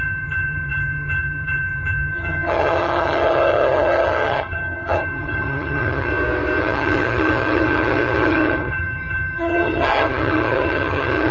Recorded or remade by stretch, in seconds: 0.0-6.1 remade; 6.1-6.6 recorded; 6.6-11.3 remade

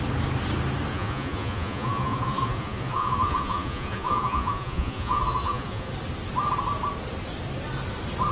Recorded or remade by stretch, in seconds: 0.0-0.9 recorded; 0.9-5.9 remade; 5.9-8.3 recorded

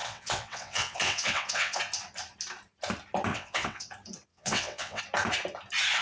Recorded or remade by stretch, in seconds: 0.0-1.8 remade; 1.8-3.3 recorded; 3.3-3.9 remade; 3.9-4.3 recorded; 4.3-5.0 remade; 5.0-6.0 recorded